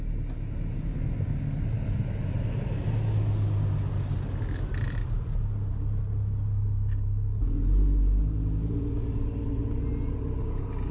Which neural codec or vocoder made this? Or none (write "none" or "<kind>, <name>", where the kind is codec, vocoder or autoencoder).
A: none